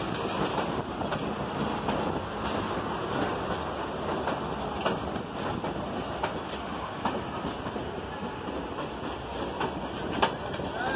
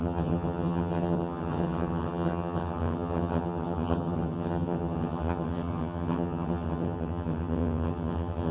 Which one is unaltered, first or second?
first